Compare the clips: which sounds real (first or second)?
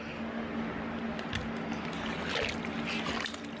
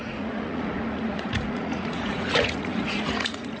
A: first